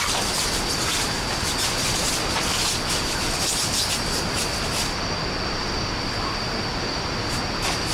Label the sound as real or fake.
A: real